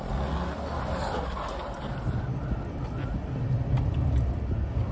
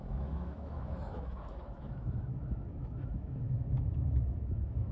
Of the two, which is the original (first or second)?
first